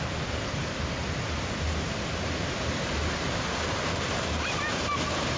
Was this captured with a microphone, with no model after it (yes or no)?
yes